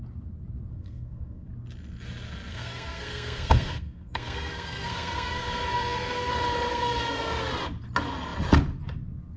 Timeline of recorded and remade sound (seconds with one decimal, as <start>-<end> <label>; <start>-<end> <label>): 0.0-0.7 recorded; 0.7-1.5 remade; 1.5-2.5 recorded; 2.5-6.3 remade; 6.3-6.7 recorded; 6.7-7.3 remade; 7.3-9.4 recorded